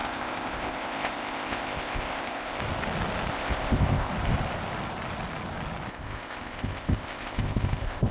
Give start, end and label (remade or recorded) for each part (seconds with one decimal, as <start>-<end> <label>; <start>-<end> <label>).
0.0-2.6 remade; 2.6-3.3 recorded; 3.3-4.1 remade; 4.1-5.9 recorded; 5.9-8.1 remade